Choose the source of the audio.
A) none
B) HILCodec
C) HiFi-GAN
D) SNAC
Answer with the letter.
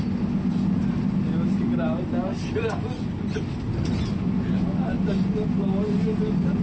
A